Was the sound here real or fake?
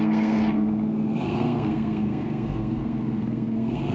fake